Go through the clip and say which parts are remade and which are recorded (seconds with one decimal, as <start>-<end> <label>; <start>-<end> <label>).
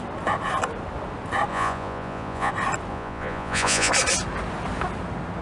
0.0-1.5 recorded; 1.5-2.5 remade; 2.5-2.9 recorded; 2.9-3.9 remade; 3.9-5.4 recorded